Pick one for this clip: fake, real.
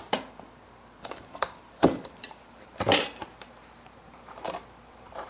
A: fake